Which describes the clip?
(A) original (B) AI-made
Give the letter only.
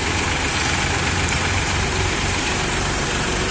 B